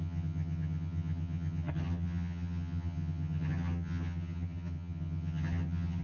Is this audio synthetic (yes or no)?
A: yes